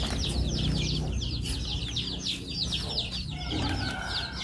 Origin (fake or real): real